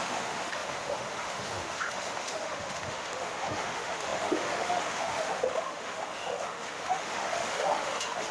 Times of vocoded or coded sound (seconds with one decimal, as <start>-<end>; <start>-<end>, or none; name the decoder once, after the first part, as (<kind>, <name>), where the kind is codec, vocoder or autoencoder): 0.0-8.3 (autoencoder, DAC-VAE)